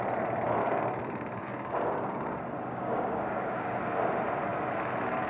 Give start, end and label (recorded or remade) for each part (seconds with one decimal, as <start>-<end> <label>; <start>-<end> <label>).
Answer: 0.0-0.6 recorded; 0.6-3.8 remade; 3.8-5.3 recorded